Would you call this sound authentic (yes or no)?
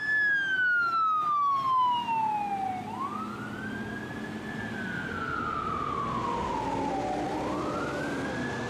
yes